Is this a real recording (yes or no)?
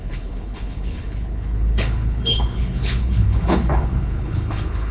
no